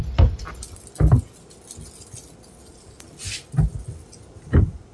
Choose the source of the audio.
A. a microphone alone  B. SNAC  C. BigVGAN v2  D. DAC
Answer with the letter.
A